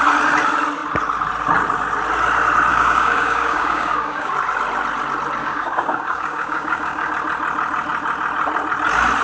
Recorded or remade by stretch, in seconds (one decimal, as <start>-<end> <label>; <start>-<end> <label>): 0.0-2.7 recorded; 2.7-4.3 remade; 4.3-5.4 recorded; 5.4-7.1 remade; 7.1-9.2 recorded